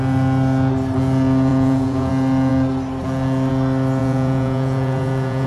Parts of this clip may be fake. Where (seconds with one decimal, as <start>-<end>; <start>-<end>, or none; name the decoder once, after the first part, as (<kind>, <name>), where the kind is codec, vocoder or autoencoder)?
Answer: 1.5-2.1 (vocoder, Vocos); 4.0-5.5